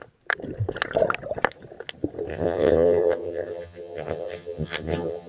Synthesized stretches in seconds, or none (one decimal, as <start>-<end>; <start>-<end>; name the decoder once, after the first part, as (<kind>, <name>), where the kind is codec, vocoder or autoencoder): 2.3-5.3 (vocoder, HiFi-GAN)